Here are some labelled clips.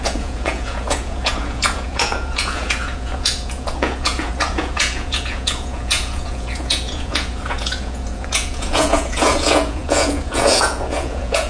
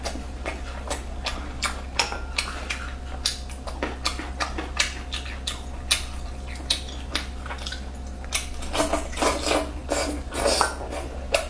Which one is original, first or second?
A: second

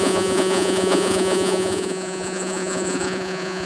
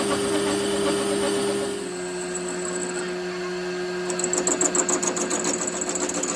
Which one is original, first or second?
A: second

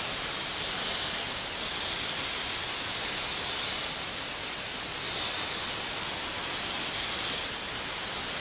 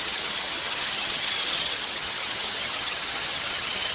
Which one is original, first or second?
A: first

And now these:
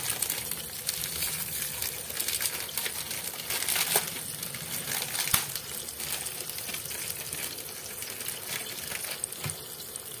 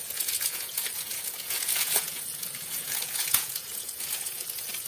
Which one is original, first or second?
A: first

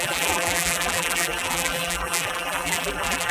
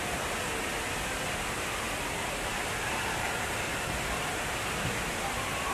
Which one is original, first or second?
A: second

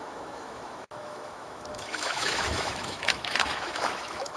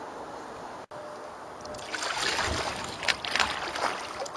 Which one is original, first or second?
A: second